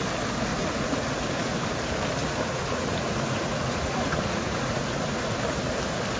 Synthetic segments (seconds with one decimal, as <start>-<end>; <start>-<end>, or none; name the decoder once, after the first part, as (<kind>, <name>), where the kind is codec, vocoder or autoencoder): 0.5-1.6 (vocoder, Vocos); 2.2-5.4